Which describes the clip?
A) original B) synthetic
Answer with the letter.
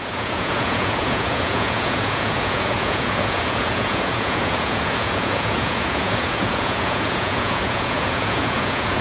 B